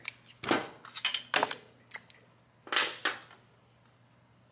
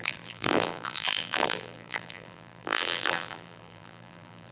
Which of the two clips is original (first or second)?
first